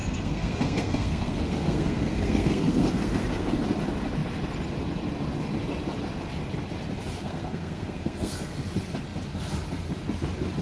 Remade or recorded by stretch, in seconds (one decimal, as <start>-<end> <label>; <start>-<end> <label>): 0.0-3.5 remade; 3.5-7.2 recorded; 7.2-8.5 remade; 8.5-10.6 recorded